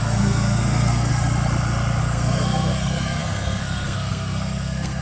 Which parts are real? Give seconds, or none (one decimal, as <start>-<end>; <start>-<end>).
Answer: 1.1-2.0